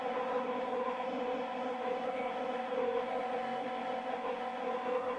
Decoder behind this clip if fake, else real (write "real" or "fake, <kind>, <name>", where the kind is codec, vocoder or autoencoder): fake, codec, SNAC